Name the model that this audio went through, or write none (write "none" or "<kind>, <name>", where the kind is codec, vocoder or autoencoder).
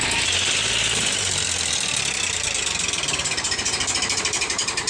vocoder, BigVGAN v2